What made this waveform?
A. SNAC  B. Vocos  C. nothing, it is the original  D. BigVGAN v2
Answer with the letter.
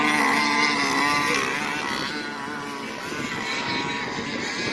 C